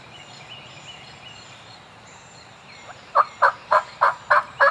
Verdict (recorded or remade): remade